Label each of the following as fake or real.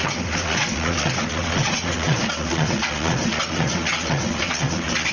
fake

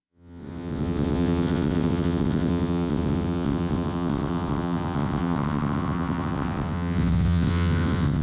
fake